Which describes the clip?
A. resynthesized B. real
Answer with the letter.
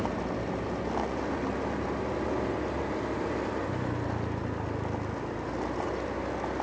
B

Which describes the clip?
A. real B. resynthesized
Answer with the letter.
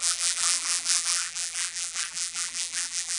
B